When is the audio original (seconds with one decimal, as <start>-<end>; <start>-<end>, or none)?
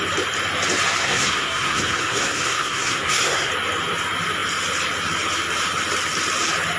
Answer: 0.0-1.0; 3.5-6.8